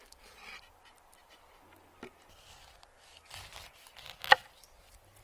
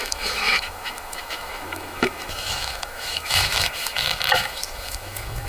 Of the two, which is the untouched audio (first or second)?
first